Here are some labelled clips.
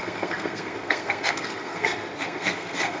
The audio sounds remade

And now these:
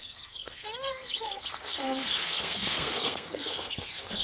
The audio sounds remade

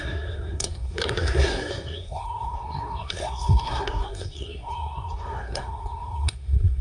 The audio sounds remade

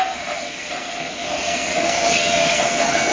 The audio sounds remade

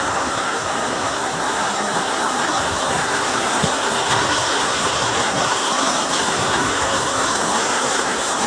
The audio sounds remade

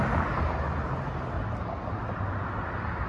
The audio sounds recorded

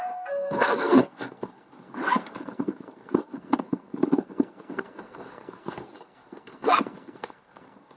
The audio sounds remade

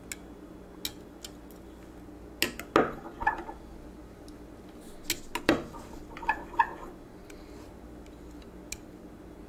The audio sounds recorded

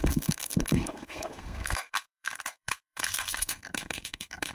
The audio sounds remade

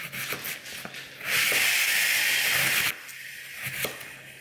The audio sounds recorded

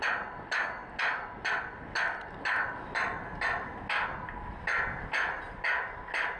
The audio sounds recorded